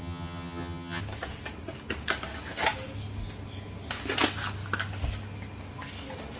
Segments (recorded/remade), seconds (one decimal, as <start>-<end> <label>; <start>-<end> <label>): 0.0-1.0 remade; 1.0-6.4 recorded